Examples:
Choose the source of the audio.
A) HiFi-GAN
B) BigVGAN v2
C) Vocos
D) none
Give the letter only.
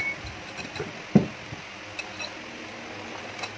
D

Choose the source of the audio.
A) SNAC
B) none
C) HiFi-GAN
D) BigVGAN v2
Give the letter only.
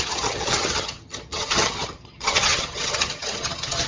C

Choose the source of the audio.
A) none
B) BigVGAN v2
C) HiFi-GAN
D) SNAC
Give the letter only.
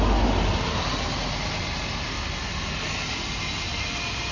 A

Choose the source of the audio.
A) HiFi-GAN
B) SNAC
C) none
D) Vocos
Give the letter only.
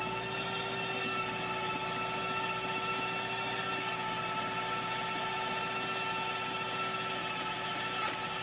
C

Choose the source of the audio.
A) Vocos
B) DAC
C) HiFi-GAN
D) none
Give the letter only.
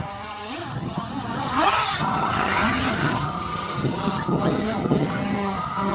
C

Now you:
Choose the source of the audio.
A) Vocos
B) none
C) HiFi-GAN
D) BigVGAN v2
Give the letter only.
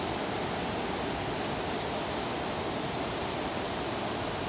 B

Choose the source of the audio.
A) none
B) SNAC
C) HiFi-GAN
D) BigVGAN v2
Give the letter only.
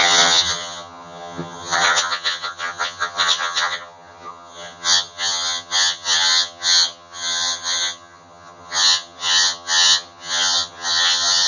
C